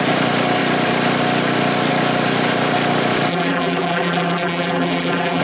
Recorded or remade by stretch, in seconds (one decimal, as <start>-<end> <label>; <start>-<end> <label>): 0.0-3.3 recorded; 3.3-5.4 remade